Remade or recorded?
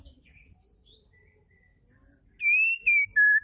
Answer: recorded